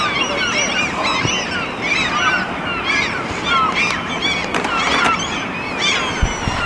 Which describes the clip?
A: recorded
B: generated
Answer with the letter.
A